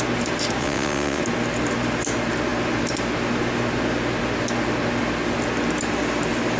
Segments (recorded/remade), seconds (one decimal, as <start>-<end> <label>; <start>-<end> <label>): 0.0-0.6 recorded; 0.6-1.2 remade; 1.2-6.6 recorded